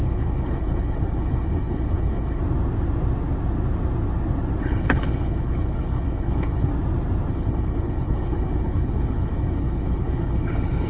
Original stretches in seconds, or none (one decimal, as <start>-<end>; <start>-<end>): 2.4-4.6; 6.7-7.3